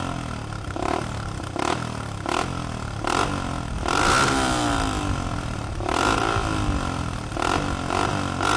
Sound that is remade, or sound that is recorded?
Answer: recorded